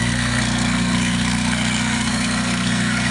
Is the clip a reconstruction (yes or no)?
yes